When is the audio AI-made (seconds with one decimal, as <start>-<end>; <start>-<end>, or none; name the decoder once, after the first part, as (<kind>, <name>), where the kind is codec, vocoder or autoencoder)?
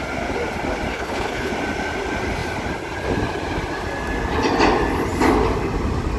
0.9-1.5 (codec, HILCodec)